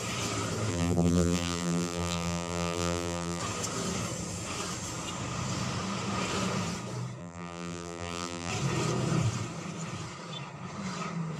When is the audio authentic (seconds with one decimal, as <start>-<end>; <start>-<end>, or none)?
0.0-0.7; 3.4-7.2; 8.5-11.4